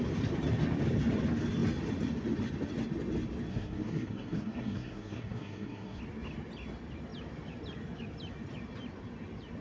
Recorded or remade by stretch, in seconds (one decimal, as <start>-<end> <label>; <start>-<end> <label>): 0.0-3.5 recorded; 3.5-6.0 remade; 6.0-9.6 recorded